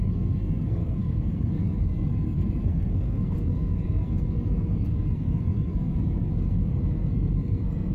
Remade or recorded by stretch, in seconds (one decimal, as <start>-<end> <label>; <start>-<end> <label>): 0.0-7.9 remade